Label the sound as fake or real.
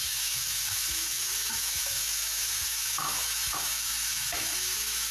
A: fake